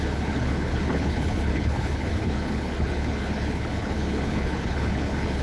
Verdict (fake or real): fake